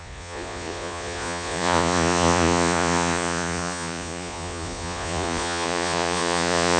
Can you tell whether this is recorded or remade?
remade